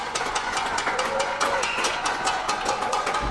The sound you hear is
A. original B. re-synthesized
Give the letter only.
B